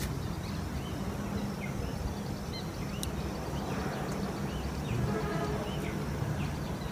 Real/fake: real